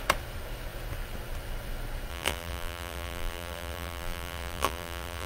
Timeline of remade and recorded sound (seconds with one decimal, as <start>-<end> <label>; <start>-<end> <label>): 0.0-2.1 recorded; 2.1-5.3 remade